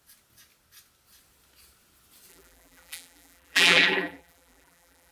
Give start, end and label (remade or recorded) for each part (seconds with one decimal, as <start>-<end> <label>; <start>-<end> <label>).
0.0-2.3 recorded; 2.3-5.1 remade